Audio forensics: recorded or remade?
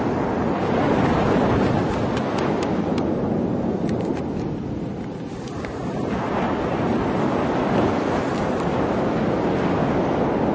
recorded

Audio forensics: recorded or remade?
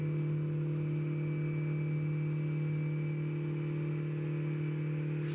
recorded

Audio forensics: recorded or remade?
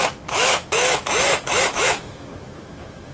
remade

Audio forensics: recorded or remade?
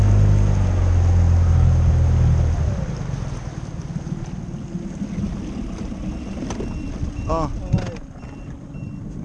recorded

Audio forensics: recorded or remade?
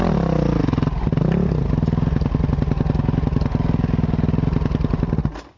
recorded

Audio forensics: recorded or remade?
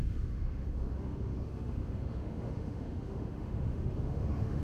remade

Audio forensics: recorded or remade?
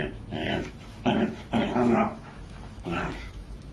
remade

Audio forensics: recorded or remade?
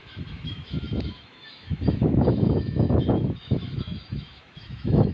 remade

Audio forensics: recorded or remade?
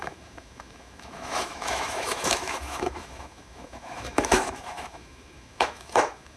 remade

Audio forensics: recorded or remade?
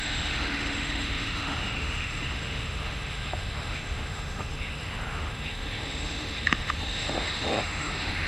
remade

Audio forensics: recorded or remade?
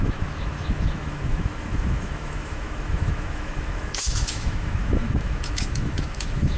remade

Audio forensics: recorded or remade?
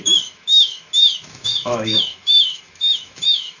remade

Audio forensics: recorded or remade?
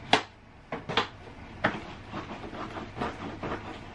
recorded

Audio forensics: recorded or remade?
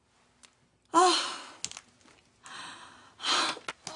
recorded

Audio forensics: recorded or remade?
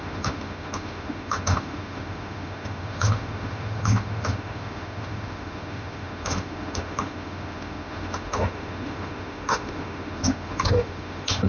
remade